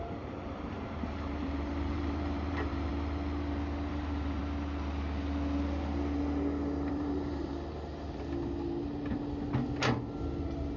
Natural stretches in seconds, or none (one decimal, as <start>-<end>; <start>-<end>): 2.9-3.9; 4.4-6.9; 7.5-9.9

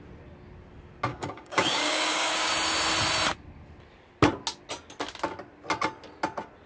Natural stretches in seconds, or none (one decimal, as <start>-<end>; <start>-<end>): 0.0-1.1; 2.5-6.7

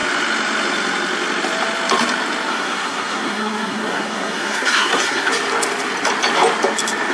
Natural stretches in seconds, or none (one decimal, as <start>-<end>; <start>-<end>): 0.0-2.5; 5.3-7.1

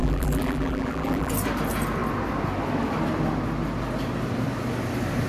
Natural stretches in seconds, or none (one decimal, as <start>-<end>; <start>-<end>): 1.3-5.3

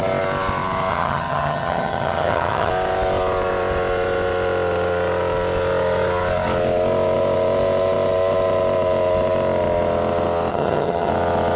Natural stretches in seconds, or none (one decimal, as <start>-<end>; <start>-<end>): 0.0-0.9; 2.7-10.5; 11.1-11.6

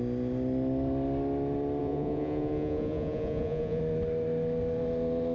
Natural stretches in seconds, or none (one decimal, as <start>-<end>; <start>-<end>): 0.0-1.8; 3.8-5.3